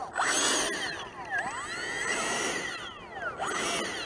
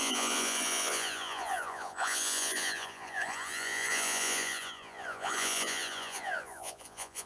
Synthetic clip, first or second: second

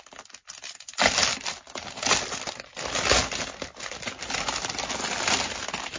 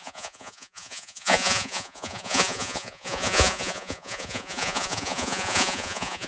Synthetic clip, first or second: second